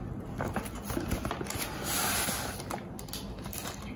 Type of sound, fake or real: real